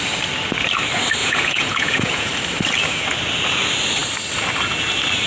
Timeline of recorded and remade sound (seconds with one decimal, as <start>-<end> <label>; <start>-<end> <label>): 0.0-1.2 recorded; 1.2-2.3 remade; 2.3-5.3 recorded